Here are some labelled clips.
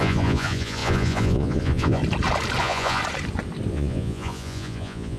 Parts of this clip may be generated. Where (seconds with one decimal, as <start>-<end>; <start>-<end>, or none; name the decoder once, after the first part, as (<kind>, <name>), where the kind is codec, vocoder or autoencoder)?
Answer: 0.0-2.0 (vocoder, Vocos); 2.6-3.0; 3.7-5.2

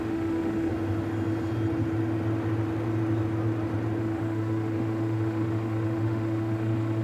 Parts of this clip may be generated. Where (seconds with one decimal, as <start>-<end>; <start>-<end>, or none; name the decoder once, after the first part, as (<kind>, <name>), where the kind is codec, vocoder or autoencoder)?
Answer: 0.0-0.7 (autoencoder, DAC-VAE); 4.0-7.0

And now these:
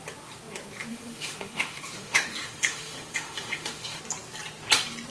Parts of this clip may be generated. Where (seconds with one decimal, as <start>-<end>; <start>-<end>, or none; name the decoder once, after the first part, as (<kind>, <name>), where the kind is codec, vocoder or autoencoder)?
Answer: 0.9-4.0 (autoencoder, DAC-VAE)

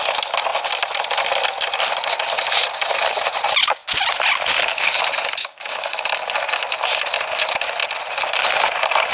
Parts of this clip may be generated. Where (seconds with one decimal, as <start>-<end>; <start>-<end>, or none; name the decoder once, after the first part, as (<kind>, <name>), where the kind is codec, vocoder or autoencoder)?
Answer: 5.4-6.0 (codec, DAC)

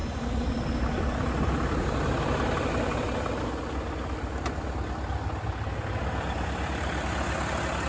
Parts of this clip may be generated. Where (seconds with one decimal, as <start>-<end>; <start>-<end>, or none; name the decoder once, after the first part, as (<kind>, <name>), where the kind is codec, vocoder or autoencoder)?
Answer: none

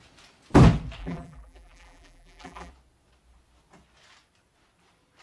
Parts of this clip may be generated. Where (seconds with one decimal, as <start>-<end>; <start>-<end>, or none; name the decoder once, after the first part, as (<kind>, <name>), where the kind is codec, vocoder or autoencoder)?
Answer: 1.0-2.7 (vocoder, BigVGAN v2)